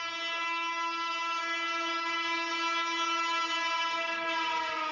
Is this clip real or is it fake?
real